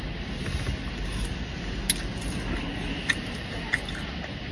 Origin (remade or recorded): recorded